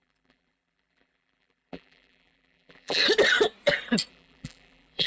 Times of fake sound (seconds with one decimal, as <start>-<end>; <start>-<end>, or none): 0.0-3.0; 4.1-5.1